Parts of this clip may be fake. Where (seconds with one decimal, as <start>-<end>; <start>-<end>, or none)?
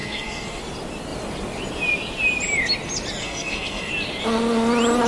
0.0-0.6; 3.2-3.9